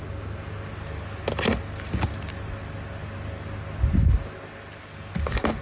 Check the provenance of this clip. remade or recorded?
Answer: recorded